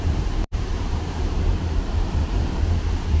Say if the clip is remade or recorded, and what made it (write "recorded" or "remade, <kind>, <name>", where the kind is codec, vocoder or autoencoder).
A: remade, vocoder, BigVGAN v2